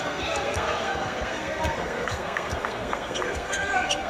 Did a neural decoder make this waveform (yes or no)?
yes